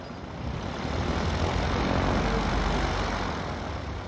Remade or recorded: recorded